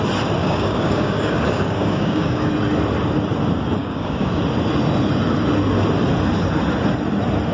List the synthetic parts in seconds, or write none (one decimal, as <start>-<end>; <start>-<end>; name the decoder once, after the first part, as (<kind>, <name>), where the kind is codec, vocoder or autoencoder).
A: 0.4-2.5 (codec, DAC); 3.8-4.4